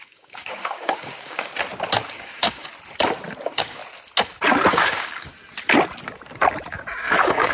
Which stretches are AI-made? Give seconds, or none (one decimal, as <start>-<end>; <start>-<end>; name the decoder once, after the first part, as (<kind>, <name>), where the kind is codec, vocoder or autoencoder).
0.0-1.5 (codec, DAC); 2.1-2.7; 3.4-3.8; 4.7-5.3; 7.0-7.5